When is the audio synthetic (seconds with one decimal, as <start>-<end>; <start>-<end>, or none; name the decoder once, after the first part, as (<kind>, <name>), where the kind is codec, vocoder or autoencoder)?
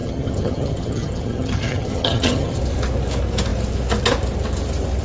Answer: 0.0-2.6 (vocoder, HiFi-GAN)